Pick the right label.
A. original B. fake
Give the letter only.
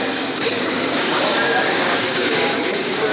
B